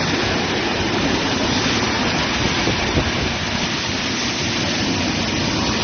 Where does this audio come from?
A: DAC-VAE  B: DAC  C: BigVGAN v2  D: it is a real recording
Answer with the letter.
C